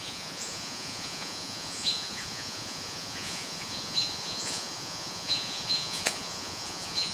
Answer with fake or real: fake